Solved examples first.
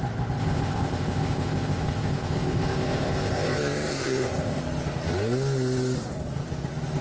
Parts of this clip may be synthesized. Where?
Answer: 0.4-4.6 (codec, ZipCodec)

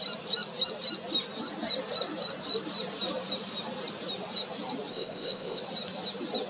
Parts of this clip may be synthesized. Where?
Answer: 4.9-5.6 (codec, ZipCodec)

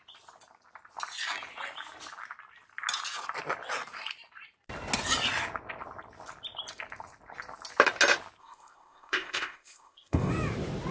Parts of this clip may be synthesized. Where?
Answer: 8.4-10.3 (codec, ZipCodec)

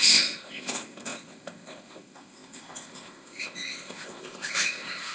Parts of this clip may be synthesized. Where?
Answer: 0.0-5.1 (codec, ZipCodec)

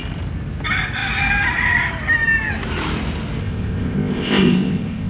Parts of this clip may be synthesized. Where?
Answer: 3.4-5.1 (codec, ZipCodec)

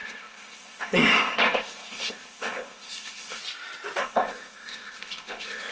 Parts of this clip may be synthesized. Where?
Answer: 0.0-3.4 (codec, ZipCodec); 4.0-5.7

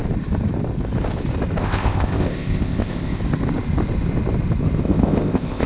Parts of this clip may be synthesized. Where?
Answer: 1.6-3.2 (codec, ZipCodec); 4.8-5.7